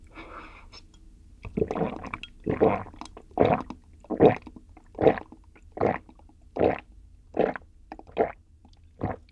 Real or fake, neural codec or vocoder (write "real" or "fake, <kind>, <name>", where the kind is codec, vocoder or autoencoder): real